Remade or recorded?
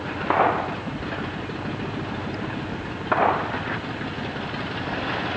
recorded